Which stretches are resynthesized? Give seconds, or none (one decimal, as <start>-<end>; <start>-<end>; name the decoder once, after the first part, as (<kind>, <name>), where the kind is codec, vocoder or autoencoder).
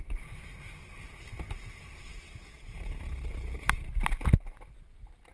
2.1-3.9 (vocoder, BigVGAN v2)